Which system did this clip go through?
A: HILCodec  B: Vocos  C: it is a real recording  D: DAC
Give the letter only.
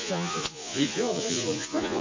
B